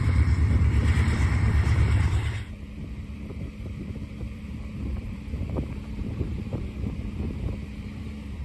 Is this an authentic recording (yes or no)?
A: no